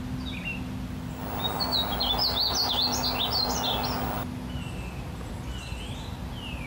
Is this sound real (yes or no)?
yes